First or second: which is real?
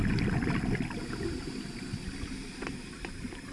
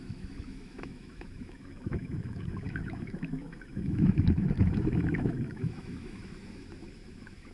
first